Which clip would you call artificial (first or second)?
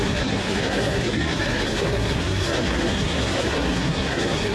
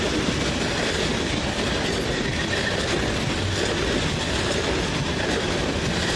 first